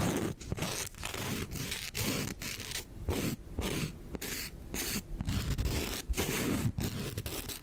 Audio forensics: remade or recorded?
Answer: recorded